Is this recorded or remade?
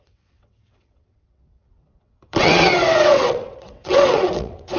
remade